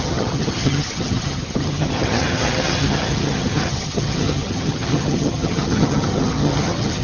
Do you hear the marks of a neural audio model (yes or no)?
yes